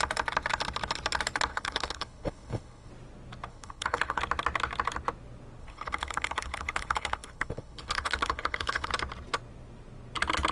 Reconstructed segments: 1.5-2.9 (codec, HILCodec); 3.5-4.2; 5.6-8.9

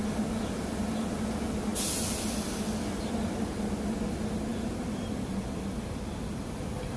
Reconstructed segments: none

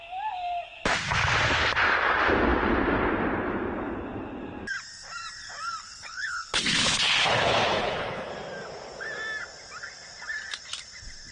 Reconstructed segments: 5.8-8.3 (codec, HILCodec)

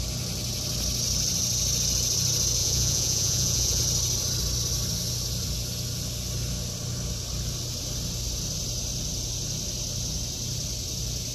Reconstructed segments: 2.6-3.8 (vocoder, Vocos)

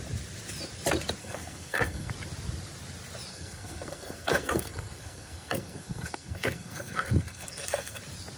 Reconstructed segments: 1.2-2.1 (codec, SNAC); 3.3-8.0

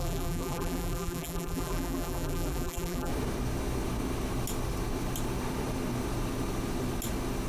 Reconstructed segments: 0.0-3.1 (vocoder, BigVGAN v2)

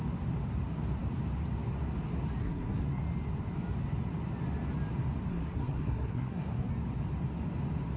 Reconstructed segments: 2.4-3.0 (codec, SNAC); 5.3-6.7

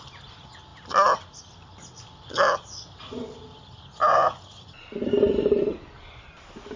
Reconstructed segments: none